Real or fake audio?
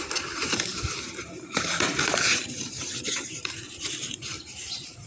fake